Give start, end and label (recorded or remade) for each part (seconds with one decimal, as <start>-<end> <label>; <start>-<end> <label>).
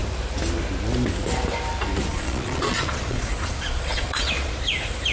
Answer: 0.0-2.1 recorded; 2.1-4.6 remade; 4.6-5.1 recorded